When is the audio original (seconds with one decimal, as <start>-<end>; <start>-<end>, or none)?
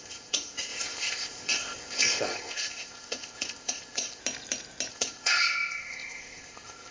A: 4.2-4.9